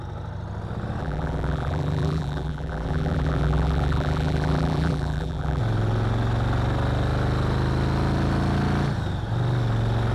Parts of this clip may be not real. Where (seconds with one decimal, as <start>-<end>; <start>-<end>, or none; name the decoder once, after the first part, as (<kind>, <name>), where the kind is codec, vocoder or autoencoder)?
1.0-5.6 (vocoder, BigVGAN v2)